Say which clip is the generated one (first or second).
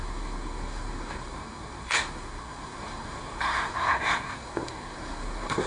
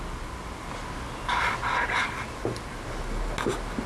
first